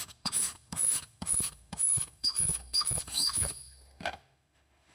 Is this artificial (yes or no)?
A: yes